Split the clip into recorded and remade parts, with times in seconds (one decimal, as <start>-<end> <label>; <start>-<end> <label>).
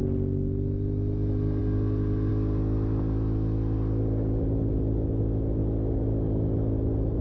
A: 0.0-7.2 recorded